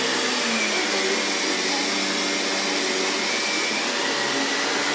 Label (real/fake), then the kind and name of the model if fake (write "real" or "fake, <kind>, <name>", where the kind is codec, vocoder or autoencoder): real